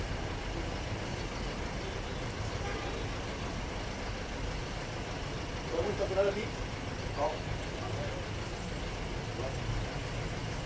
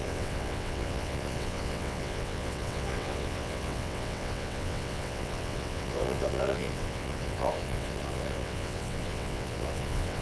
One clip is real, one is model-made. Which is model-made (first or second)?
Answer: second